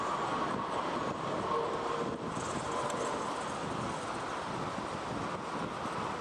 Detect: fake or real real